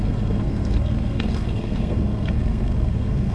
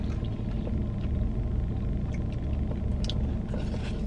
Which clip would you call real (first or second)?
second